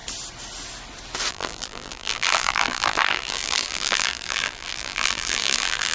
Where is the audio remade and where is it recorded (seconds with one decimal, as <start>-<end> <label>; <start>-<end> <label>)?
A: 0.0-1.3 recorded; 1.3-5.9 remade